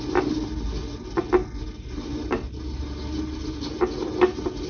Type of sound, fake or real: real